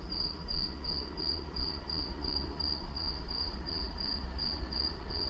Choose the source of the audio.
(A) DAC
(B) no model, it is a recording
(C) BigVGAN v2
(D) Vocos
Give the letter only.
D